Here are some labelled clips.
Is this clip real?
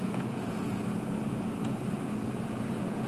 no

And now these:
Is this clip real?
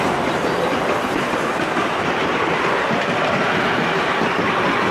yes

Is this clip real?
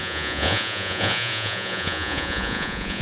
no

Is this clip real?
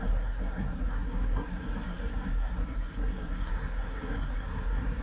no